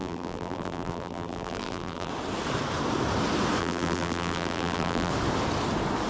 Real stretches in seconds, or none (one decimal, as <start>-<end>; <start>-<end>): 2.1-3.6; 5.1-6.1